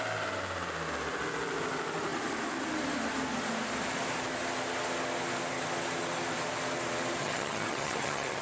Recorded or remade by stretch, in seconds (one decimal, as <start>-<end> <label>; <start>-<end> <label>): 0.0-7.2 recorded; 7.2-8.4 remade